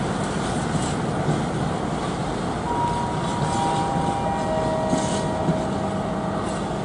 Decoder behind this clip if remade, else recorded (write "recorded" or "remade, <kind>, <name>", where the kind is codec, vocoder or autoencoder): recorded